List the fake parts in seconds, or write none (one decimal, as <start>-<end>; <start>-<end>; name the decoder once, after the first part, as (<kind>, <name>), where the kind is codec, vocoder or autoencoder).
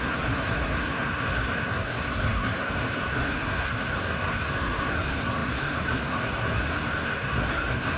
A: 0.0-8.0 (codec, SNAC)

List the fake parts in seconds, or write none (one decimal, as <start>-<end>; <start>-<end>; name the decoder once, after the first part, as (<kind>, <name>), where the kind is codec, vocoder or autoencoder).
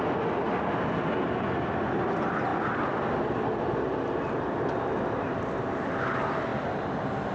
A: none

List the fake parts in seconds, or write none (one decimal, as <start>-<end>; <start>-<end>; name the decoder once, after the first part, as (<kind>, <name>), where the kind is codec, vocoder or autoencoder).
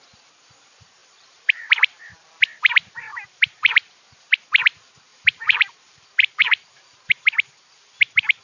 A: 1.0-2.0 (vocoder, BigVGAN v2); 3.1-4.0; 5.1-6.8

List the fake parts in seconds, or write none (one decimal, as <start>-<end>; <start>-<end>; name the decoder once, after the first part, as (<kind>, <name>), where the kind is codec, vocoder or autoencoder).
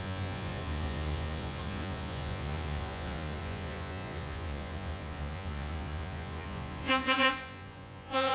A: 0.0-8.3 (vocoder, Vocos)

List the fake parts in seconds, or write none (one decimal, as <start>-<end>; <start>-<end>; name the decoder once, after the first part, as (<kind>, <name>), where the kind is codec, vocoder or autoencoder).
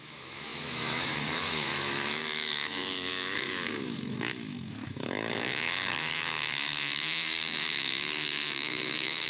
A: 0.0-9.3 (autoencoder, DAC-VAE)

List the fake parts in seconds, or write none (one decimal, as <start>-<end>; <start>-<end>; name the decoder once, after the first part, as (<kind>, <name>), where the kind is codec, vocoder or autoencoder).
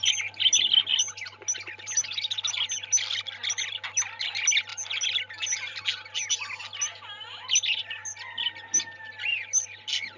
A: none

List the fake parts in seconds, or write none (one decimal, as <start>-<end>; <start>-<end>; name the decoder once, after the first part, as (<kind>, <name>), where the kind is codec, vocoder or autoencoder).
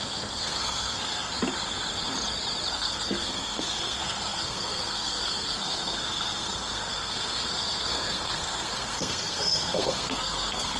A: 0.0-1.3 (codec, SNAC); 2.7-10.8